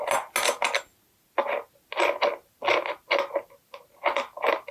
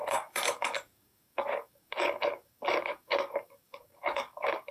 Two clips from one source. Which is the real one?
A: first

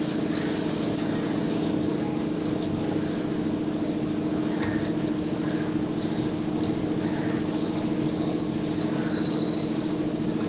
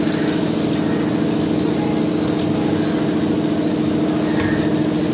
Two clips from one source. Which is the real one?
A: second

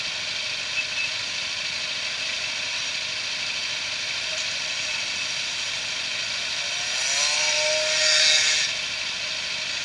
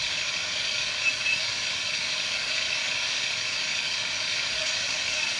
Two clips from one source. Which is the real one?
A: first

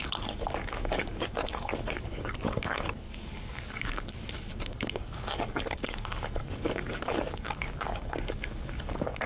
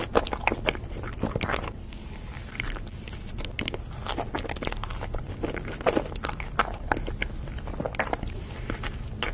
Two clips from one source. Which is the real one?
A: second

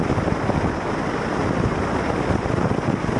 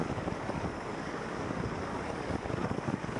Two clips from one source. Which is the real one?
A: first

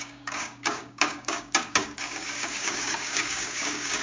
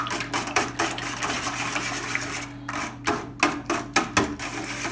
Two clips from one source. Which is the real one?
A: second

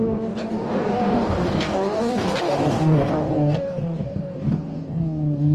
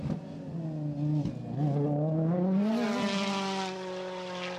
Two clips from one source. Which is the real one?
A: second